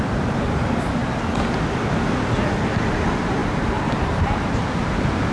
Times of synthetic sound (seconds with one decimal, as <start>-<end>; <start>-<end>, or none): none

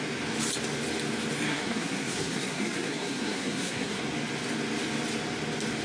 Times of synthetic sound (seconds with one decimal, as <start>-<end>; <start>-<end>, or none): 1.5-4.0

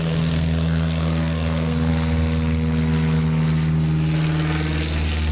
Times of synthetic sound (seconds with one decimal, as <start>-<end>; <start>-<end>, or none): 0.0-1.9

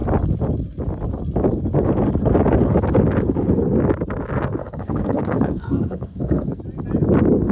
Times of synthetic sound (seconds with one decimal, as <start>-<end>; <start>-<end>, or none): 4.6-6.6